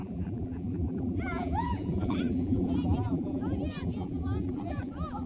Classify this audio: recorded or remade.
remade